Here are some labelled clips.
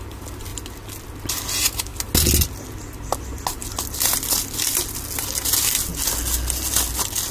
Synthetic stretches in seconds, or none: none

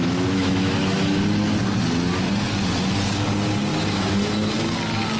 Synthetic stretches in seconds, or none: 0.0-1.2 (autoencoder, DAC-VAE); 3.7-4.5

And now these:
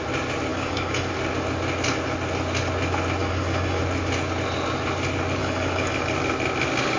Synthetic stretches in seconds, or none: 0.5-1.1 (codec, DAC); 3.2-3.8; 5.4-6.0